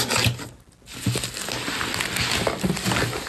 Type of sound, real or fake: real